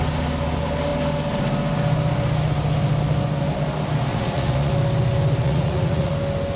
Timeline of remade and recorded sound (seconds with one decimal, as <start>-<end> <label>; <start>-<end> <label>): 0.0-4.1 recorded; 4.1-4.7 remade; 4.7-5.4 recorded; 5.4-6.1 remade; 6.1-6.6 recorded